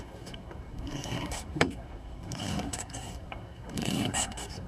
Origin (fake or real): fake